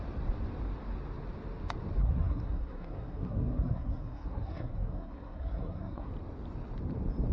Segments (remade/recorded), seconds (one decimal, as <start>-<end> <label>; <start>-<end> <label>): 0.0-2.0 recorded; 2.0-6.1 remade; 6.1-7.3 recorded